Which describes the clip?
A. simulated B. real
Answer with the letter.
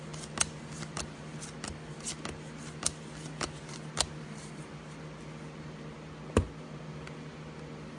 B